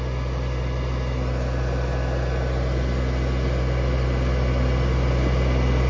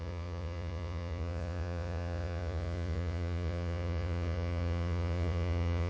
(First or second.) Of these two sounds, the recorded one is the first